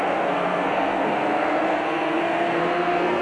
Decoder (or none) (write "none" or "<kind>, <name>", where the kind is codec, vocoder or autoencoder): codec, SNAC